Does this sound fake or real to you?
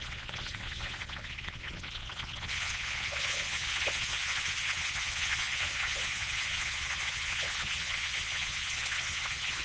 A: fake